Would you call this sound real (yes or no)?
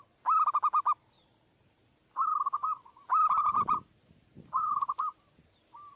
yes